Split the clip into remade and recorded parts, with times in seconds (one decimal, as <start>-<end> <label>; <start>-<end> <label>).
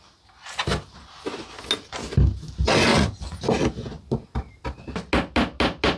0.0-2.9 recorded; 2.9-3.4 remade; 3.4-6.0 recorded